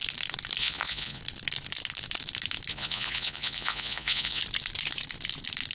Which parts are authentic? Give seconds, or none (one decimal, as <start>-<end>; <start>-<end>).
0.0-0.6; 1.2-2.7; 4.4-5.7